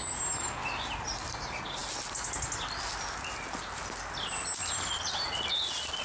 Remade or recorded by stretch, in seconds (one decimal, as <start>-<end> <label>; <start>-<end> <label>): 0.0-4.6 recorded; 4.6-5.5 remade; 5.5-6.0 recorded